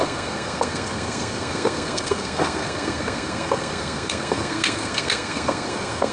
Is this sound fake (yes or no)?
yes